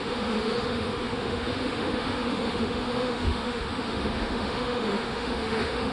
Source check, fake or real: fake